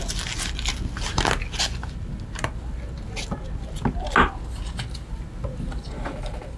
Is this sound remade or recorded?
recorded